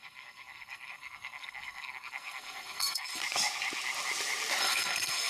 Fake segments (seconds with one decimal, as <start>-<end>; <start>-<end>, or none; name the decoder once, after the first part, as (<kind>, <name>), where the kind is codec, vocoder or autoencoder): 0.0-3.2 (codec, SNAC); 4.6-5.3